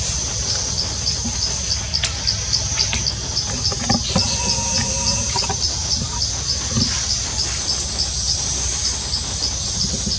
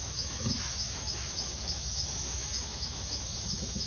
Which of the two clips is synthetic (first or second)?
second